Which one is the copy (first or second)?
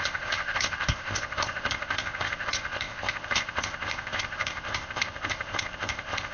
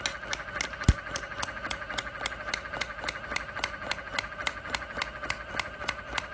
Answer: first